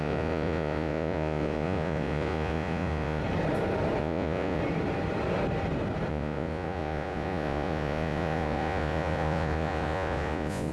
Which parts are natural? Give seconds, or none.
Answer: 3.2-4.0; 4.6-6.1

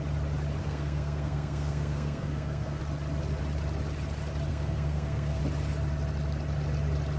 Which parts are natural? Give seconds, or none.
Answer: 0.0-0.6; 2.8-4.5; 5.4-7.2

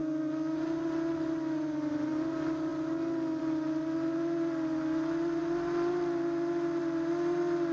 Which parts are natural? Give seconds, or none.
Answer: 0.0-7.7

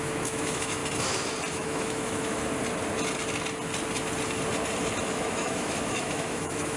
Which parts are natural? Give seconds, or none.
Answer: 0.8-1.5; 2.5-5.1

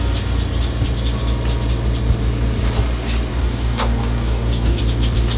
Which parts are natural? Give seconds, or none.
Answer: 0.0-3.3; 4.8-5.4

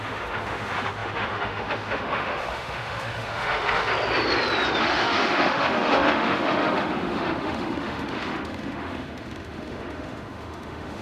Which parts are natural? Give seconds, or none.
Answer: 3.9-4.8

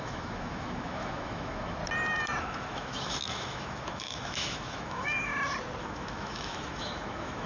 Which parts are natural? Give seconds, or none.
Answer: 1.8-2.4; 5.3-5.8